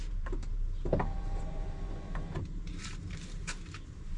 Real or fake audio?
fake